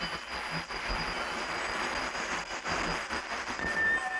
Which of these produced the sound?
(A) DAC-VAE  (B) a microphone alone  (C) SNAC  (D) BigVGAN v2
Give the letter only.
B